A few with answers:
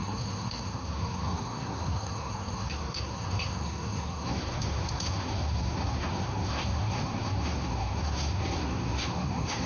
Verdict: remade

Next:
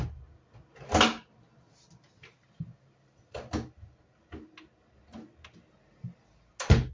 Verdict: recorded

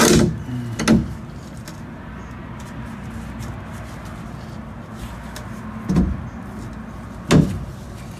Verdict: recorded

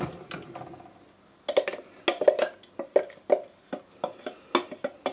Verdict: recorded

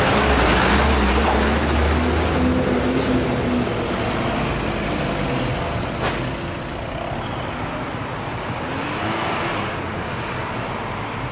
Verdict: recorded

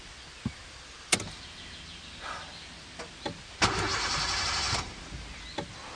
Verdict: recorded